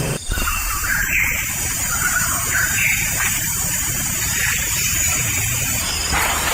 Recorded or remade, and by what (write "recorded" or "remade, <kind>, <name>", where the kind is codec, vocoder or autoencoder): remade, vocoder, BigVGAN v2